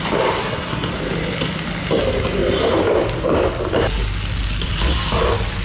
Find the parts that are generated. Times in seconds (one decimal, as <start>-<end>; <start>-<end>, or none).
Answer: 0.4-0.9